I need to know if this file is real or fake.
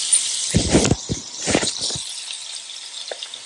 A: real